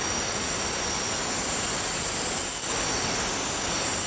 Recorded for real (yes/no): yes